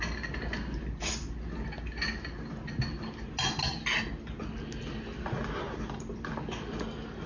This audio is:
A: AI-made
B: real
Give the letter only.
B